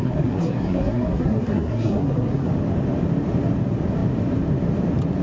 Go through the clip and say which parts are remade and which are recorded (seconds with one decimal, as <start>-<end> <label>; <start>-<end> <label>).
0.0-2.5 remade; 2.5-5.2 recorded